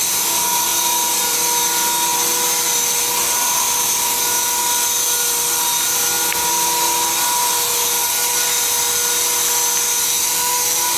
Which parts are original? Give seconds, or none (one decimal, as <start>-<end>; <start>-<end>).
0.0-11.0